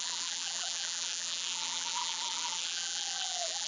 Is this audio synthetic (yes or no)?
yes